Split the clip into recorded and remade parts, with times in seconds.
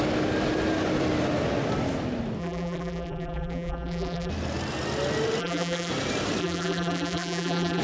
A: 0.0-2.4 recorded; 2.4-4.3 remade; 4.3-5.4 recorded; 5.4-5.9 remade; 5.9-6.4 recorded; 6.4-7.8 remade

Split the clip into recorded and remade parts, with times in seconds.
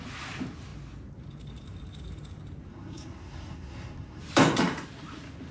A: 0.0-2.7 recorded; 2.7-4.2 remade; 4.2-5.5 recorded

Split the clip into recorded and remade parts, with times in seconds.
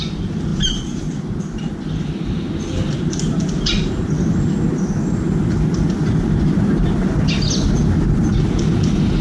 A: 0.0-9.2 recorded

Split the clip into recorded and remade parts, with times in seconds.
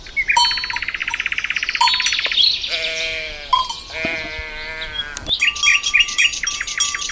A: 0.0-5.7 recorded; 5.7-7.1 remade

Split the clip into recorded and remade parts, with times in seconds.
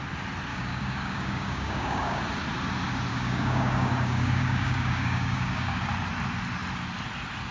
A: 0.0-0.5 recorded; 0.5-2.2 remade; 2.2-3.1 recorded; 3.1-5.8 remade; 5.8-7.5 recorded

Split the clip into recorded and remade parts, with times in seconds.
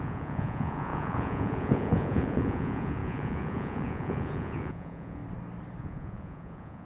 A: 0.0-5.2 remade; 5.2-5.8 recorded; 5.8-6.9 remade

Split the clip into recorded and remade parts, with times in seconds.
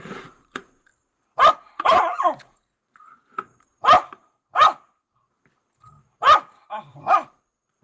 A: 0.0-0.9 remade; 0.9-1.5 recorded; 1.5-3.3 remade; 3.3-7.1 recorded; 7.1-7.8 remade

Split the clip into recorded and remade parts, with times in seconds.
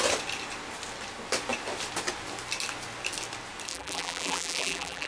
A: 0.0-3.7 recorded; 3.7-5.1 remade